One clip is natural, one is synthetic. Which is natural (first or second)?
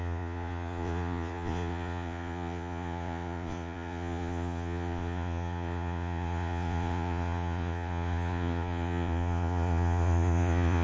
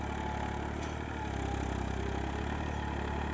second